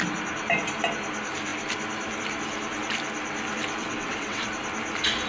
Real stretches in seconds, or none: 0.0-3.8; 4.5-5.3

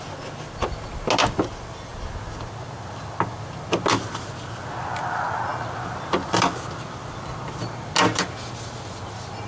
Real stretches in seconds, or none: 0.0-9.5

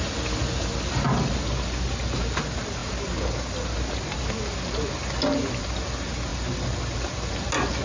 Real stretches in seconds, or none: 0.0-7.8